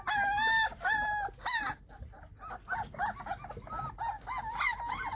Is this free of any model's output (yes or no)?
yes